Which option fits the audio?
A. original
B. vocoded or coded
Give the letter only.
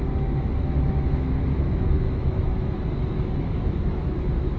B